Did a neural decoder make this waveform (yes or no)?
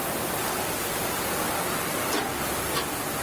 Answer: no